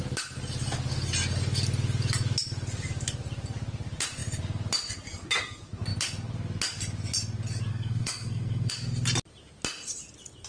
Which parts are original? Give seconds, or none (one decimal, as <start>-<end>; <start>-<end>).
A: 0.0-7.7; 8.7-10.5